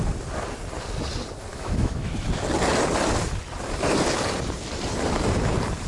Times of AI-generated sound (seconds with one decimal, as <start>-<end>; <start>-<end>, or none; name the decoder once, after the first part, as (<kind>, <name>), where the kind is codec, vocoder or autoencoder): 1.5-2.1 (autoencoder, DAC-VAE)